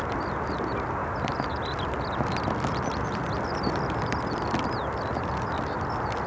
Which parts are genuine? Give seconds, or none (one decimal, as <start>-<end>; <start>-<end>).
0.0-6.3